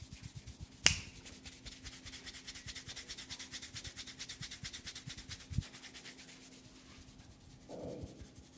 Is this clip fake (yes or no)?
no